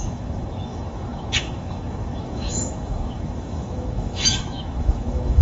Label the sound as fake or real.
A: fake